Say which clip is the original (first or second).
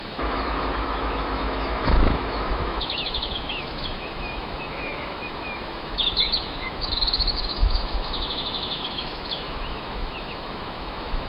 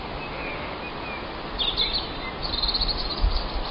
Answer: second